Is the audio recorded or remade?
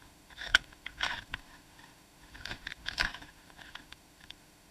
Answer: remade